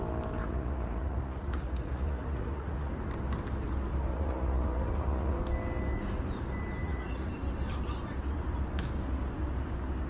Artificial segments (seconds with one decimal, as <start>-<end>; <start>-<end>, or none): 0.4-2.9; 4.1-5.4; 6.8-7.3